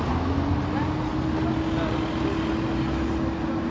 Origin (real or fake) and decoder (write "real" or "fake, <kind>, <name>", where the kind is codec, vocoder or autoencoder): real